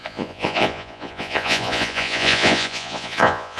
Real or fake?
fake